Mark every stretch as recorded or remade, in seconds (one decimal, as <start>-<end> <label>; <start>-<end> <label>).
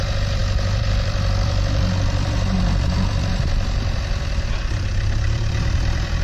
0.0-6.2 remade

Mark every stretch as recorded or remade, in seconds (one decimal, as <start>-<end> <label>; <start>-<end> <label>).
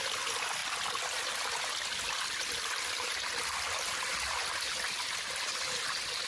0.0-6.3 recorded